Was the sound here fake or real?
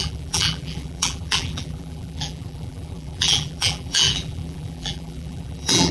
fake